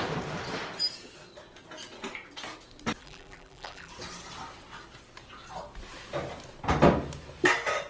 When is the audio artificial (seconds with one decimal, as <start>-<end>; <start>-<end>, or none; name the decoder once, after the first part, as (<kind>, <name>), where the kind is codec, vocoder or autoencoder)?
3.0-3.9 (vocoder, BigVGAN v2)